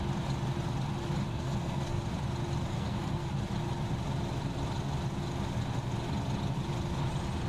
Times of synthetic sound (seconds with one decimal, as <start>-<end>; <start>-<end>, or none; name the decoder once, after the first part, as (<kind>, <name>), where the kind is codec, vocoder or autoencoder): 1.3-2.0 (codec, SNAC); 2.7-3.3